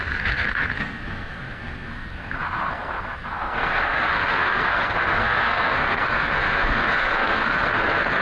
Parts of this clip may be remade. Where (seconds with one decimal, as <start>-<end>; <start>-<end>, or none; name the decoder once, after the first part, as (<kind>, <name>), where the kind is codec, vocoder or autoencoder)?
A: 0.0-8.2 (codec, SNAC)